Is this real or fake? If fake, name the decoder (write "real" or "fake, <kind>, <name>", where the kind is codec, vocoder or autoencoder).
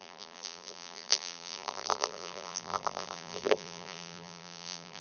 fake, vocoder, BigVGAN v2